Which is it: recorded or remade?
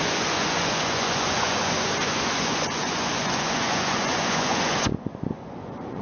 remade